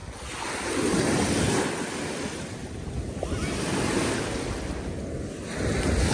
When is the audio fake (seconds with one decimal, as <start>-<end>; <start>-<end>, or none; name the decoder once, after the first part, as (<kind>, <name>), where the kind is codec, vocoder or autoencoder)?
none